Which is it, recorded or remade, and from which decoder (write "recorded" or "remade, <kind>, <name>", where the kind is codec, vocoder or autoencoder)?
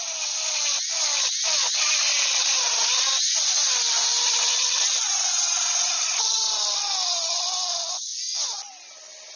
recorded